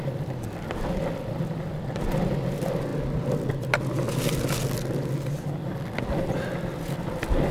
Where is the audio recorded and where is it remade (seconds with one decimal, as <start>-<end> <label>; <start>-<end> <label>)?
0.0-7.5 recorded

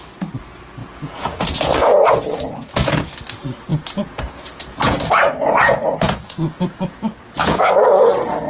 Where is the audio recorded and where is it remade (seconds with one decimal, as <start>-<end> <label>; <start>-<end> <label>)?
0.0-0.8 recorded; 0.8-2.9 remade; 2.9-3.7 recorded; 3.7-7.7 remade; 7.7-8.5 recorded

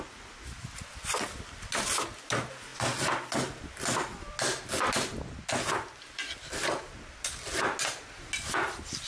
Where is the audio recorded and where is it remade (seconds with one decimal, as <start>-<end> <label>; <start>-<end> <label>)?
0.0-9.1 recorded

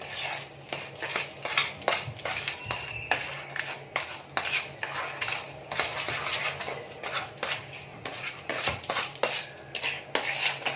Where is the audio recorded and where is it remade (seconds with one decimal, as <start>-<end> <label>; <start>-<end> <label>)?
0.0-7.9 recorded; 7.9-9.2 remade; 9.2-10.8 recorded

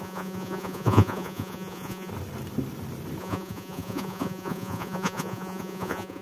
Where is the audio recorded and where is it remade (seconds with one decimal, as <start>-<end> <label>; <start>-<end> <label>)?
0.0-2.1 remade; 2.1-3.2 recorded; 3.2-6.2 remade